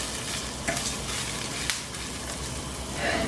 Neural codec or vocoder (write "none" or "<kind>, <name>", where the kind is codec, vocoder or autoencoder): none